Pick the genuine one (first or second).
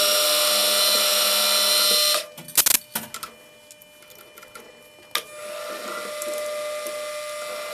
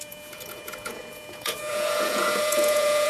first